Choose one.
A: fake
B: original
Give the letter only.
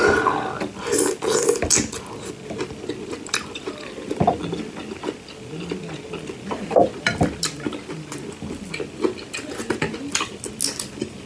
B